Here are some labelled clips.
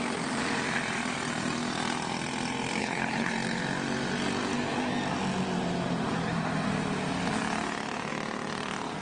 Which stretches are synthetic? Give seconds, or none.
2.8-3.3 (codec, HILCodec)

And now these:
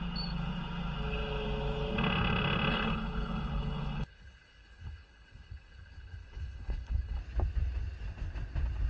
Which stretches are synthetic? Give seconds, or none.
2.7-7.2 (codec, HILCodec)

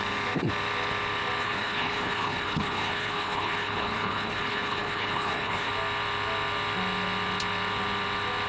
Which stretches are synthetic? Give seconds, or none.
1.4-5.7 (codec, HILCodec)